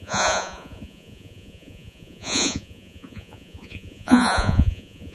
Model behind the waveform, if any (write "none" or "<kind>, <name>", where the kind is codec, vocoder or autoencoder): vocoder, Vocos